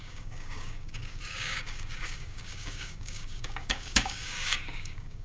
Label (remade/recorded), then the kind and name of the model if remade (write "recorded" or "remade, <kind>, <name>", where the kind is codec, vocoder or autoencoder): remade, codec, DAC